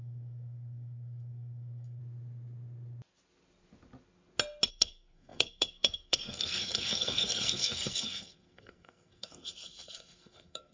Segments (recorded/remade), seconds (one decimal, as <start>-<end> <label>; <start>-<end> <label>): 0.0-2.0 remade; 2.0-4.7 recorded; 4.7-10.7 remade